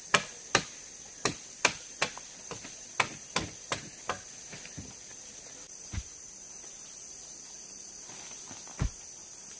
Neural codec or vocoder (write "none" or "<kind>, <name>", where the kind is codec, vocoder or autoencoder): vocoder, BigVGAN v2